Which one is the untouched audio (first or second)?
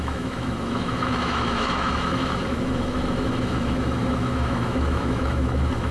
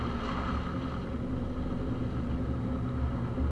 second